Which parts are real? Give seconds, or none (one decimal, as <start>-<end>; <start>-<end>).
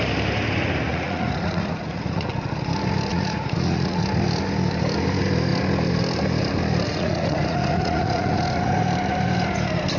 0.0-0.9; 2.3-3.1; 4.0-6.9; 8.7-10.0